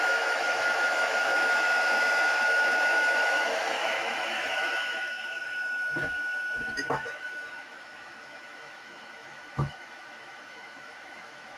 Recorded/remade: remade